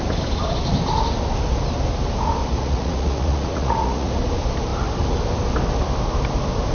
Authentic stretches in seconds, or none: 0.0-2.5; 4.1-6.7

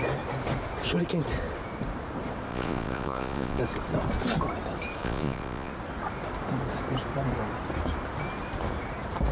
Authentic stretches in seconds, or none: 0.0-2.5; 3.6-5.0; 5.7-9.3